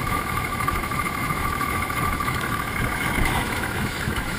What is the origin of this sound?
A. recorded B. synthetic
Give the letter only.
B